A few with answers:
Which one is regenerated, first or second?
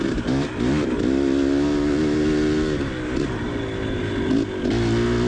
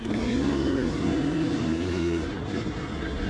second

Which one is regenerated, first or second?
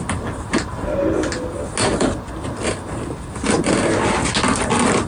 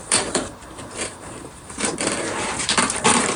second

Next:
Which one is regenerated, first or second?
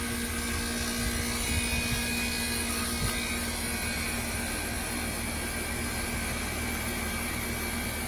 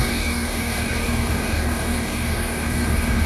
second